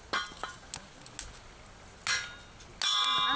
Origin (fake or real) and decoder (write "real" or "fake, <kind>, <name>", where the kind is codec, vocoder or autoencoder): real